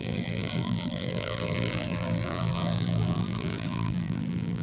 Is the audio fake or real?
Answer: fake